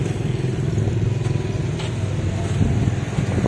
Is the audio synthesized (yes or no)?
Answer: no